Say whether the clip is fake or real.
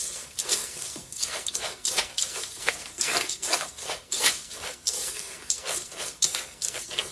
fake